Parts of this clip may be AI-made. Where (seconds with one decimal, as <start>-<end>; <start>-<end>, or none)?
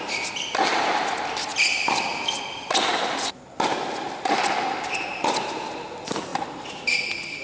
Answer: none